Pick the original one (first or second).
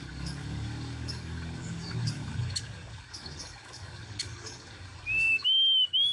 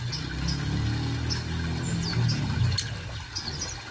second